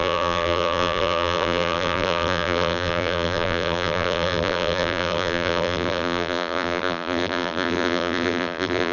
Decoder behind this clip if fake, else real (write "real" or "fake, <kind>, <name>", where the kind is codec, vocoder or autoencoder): fake, vocoder, BigVGAN v2